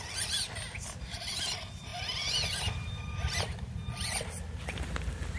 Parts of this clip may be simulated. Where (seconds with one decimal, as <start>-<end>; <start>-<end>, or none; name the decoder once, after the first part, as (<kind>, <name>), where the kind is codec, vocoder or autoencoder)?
none